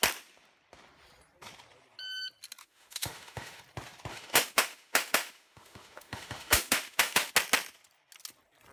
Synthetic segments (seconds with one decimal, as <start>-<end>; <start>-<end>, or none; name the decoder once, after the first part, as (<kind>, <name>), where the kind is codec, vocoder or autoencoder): 2.6-3.6 (autoencoder, DAC-VAE); 4.1-7.3